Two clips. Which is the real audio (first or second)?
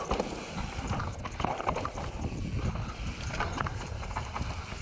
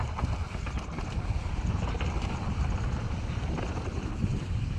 first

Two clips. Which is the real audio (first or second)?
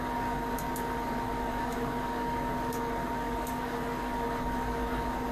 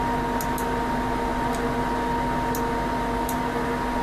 second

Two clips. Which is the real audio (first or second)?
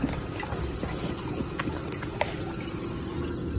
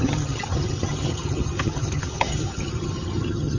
first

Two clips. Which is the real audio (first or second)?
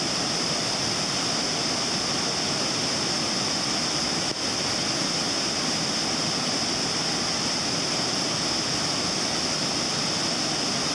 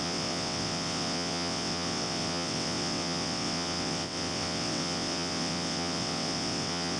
first